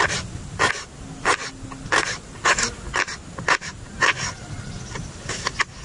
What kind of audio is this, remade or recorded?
recorded